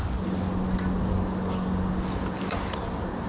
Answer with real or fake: real